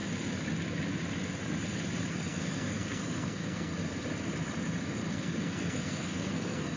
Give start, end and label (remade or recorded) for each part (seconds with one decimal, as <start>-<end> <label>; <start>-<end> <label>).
0.0-2.1 recorded; 2.1-3.7 remade; 3.7-5.1 recorded; 5.1-6.8 remade